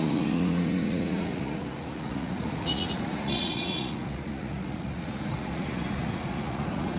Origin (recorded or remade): remade